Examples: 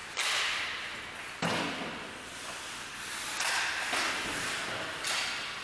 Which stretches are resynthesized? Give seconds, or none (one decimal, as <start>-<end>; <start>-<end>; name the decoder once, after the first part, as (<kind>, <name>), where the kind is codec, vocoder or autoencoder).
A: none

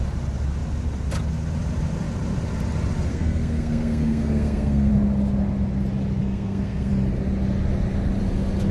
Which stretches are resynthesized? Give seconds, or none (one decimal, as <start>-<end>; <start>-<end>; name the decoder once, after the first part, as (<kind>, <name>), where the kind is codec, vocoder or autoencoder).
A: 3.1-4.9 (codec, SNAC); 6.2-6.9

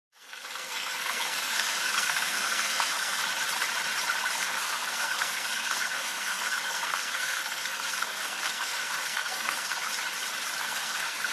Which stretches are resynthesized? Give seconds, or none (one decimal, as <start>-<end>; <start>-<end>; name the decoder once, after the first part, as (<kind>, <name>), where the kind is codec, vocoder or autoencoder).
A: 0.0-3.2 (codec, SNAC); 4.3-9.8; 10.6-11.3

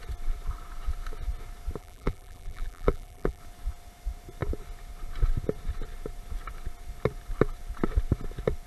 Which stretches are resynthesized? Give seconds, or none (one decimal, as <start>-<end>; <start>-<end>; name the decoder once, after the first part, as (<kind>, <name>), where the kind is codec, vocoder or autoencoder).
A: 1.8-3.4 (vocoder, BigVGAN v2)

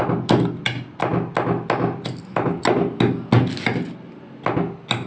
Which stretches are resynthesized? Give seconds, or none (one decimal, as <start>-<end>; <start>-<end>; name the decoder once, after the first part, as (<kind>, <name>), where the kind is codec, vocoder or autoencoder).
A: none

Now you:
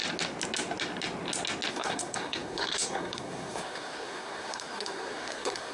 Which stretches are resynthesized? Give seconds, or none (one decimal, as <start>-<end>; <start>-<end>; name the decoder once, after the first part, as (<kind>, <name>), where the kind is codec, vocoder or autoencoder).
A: 1.7-5.7 (codec, SNAC)

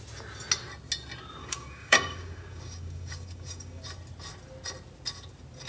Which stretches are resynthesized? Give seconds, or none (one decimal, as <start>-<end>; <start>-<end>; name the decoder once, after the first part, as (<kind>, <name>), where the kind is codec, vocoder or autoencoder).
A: 1.4-3.8 (codec, DAC)

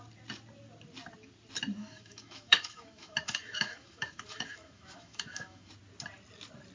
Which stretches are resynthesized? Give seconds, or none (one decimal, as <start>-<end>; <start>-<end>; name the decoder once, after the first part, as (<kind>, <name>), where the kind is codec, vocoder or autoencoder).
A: 1.8-5.7 (autoencoder, DAC-VAE)